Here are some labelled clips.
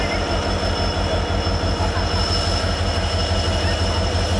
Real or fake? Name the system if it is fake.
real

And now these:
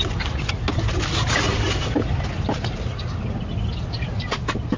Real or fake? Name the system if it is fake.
real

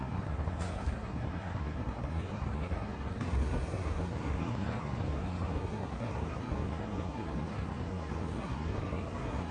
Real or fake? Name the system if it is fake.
fake, codec, SNAC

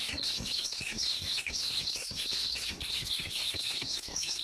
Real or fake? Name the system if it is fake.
fake, codec, SNAC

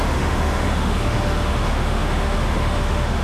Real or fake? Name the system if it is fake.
fake, autoencoder, DAC-VAE